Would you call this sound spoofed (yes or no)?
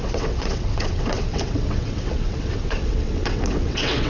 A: yes